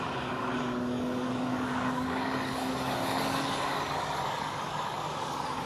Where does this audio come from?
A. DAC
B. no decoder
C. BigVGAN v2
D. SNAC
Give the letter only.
A